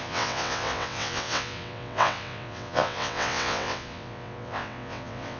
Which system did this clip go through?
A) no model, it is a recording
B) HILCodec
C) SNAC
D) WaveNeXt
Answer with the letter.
D